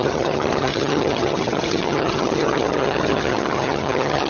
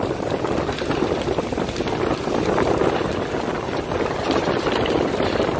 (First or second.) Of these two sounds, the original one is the second